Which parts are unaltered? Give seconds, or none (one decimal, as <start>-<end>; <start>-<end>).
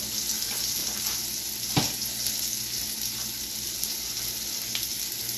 0.0-5.4